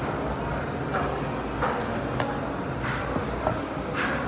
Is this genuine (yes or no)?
yes